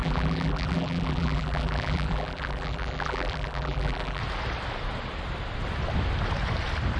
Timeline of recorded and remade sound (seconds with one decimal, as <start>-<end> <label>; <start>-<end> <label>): 0.0-4.2 remade; 4.2-7.0 recorded